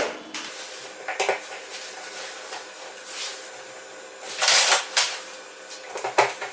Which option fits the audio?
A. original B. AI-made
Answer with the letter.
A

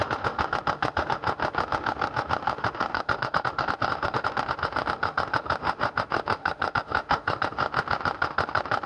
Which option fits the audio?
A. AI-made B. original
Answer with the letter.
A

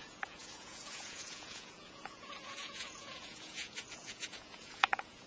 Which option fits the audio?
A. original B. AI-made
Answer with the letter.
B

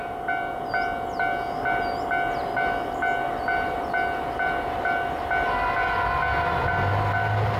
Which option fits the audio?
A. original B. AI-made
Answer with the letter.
A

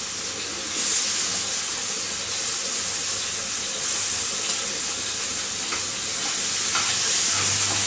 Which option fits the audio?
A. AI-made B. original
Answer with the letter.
B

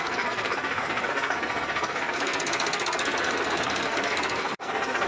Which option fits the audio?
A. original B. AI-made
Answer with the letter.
B